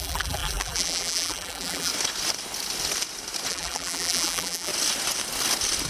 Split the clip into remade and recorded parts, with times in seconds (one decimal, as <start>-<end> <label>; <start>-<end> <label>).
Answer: 0.0-1.9 remade; 1.9-3.5 recorded; 3.5-4.7 remade; 4.7-5.9 recorded